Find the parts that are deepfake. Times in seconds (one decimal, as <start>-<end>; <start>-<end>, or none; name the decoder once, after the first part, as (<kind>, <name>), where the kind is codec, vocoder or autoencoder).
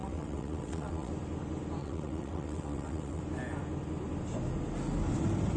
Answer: 0.0-1.1 (vocoder, WaveNeXt); 1.8-3.2